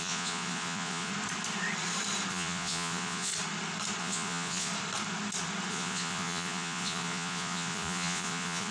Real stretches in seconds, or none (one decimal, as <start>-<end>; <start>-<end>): 1.1-2.3; 3.3-4.0; 4.7-5.7

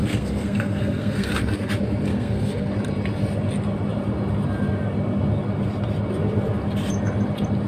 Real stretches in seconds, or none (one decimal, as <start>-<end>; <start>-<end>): 1.7-2.1; 2.7-7.7

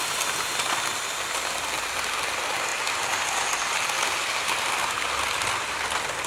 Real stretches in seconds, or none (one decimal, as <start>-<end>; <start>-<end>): 0.0-6.3

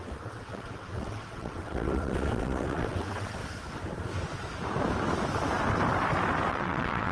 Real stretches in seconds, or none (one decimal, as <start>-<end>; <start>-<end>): 3.4-6.5